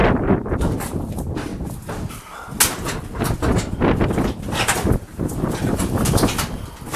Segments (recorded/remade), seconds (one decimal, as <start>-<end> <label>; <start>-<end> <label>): 0.0-7.0 recorded